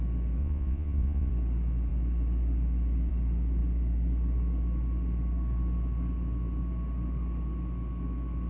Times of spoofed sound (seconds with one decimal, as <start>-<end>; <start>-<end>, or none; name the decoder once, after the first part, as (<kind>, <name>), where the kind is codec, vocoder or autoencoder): 0.4-1.3 (vocoder, Vocos)

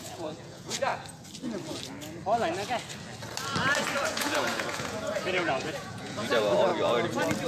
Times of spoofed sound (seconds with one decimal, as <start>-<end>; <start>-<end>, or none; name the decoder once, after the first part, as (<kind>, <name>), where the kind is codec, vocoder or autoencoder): 0.0-0.9 (vocoder, Vocos); 4.0-6.7